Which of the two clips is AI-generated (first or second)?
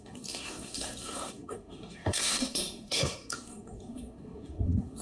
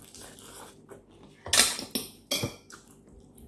first